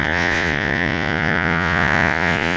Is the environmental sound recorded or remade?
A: remade